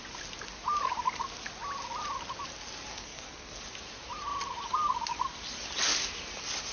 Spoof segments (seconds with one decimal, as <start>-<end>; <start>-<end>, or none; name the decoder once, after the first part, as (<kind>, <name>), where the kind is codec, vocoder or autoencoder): 2.9-3.6 (codec, SNAC)

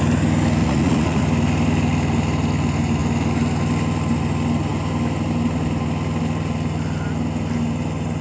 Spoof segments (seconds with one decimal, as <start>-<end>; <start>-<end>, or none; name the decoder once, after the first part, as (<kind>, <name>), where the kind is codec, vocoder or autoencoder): 0.6-1.2 (vocoder, Vocos)